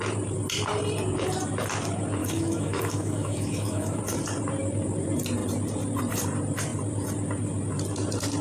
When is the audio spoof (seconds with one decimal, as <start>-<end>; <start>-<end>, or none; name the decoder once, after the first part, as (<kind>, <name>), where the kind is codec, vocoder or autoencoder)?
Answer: 2.2-4.0 (autoencoder, DAC-VAE)